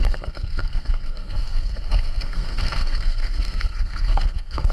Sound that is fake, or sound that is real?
fake